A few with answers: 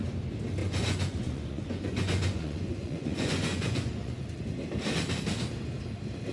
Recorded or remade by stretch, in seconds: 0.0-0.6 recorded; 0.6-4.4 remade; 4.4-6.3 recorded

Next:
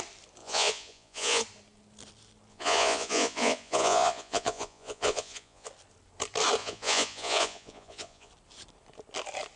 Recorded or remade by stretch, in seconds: 0.0-0.4 recorded; 0.4-1.4 remade; 1.4-2.5 recorded; 2.5-5.7 remade; 5.7-6.6 recorded; 6.6-8.3 remade; 8.3-9.6 recorded